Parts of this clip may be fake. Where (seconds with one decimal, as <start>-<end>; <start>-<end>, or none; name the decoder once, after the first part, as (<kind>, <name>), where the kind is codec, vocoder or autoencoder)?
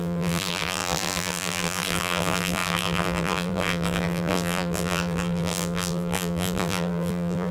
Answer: 0.0-7.5 (vocoder, BigVGAN v2)